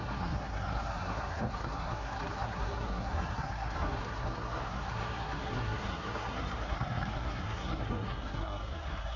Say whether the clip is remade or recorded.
remade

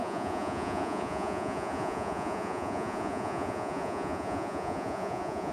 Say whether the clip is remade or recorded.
remade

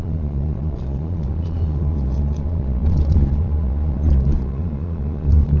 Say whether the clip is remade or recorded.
remade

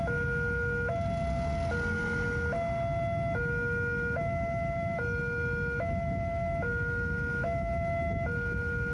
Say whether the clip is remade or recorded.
recorded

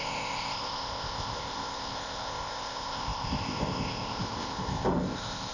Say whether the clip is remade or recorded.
remade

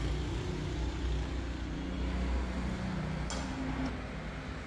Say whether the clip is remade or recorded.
recorded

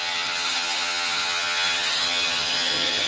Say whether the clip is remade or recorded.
remade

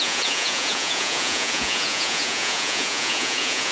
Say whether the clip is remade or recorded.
remade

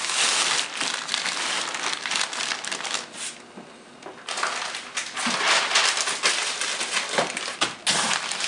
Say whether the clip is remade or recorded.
recorded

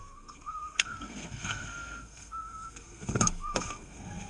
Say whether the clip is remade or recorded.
remade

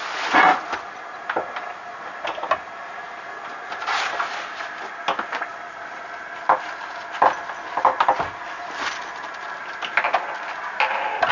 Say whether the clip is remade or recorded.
recorded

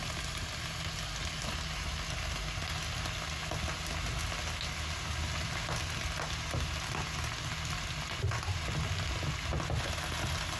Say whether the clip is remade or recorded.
recorded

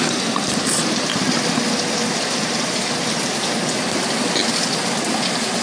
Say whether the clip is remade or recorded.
recorded